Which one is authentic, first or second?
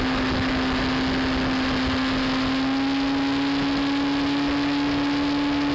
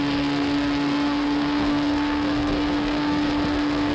first